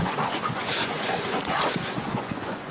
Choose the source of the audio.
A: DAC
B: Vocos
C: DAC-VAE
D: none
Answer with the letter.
B